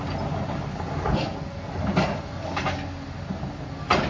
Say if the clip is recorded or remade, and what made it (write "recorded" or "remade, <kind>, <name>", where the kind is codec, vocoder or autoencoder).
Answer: recorded